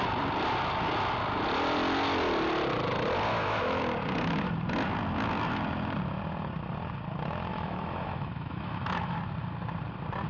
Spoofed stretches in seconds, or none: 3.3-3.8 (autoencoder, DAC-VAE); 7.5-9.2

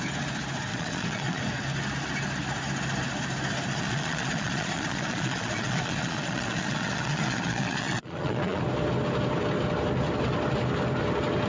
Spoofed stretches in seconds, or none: 0.7-1.4 (vocoder, Vocos); 3.7-8.6

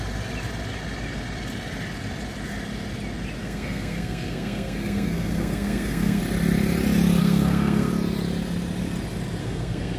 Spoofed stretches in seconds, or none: 3.4-6.2 (codec, SNAC); 7.2-7.9; 9.4-10.0

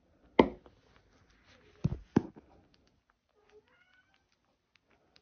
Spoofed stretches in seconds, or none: none

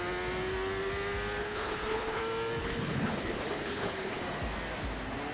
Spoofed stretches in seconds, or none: 1.4-2.2 (codec, HILCodec); 2.6-4.2

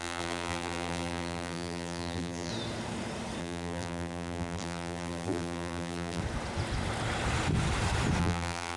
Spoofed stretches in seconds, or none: 0.0-2.5 (vocoder, BigVGAN v2); 3.4-6.2; 8.2-8.8

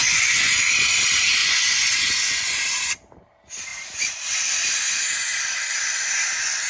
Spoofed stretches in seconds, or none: 0.0-0.5 (vocoder, Vocos); 1.4-2.6

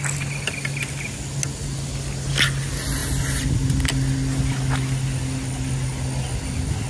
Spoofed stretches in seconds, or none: none